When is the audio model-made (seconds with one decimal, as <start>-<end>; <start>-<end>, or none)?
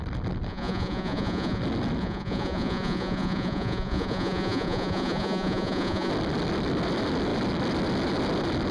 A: 0.5-1.6; 2.0-6.1